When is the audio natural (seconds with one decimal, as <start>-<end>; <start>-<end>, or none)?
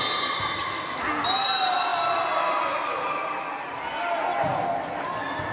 0.0-5.5